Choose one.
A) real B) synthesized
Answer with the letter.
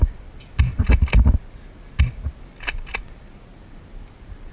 A